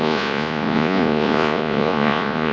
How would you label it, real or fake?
fake